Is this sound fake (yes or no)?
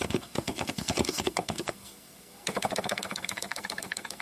yes